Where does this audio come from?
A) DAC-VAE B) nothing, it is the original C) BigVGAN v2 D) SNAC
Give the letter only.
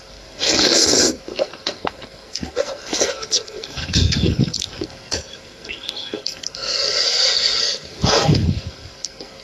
D